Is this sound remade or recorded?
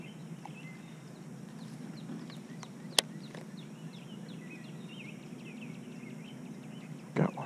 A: recorded